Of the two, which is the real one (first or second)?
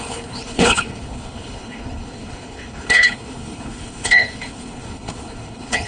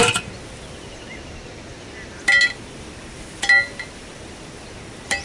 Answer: second